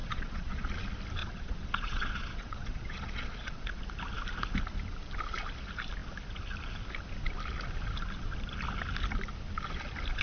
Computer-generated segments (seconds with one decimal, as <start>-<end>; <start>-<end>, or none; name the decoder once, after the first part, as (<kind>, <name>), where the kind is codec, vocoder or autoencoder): 0.0-0.7 (vocoder, Vocos); 1.2-3.8